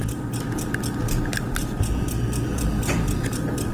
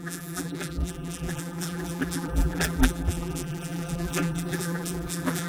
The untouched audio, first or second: first